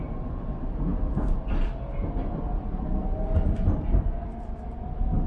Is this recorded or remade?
remade